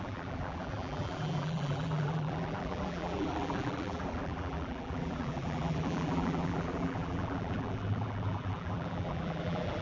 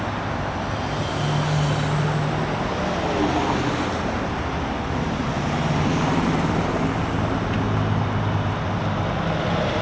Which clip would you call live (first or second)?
second